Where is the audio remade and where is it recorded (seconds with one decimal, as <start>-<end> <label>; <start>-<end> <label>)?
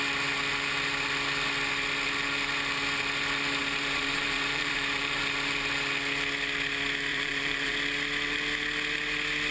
0.0-3.6 recorded; 3.6-5.2 remade; 5.2-7.1 recorded; 7.1-7.7 remade; 7.7-9.5 recorded